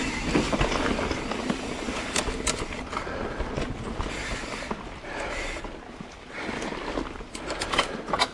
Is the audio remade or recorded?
recorded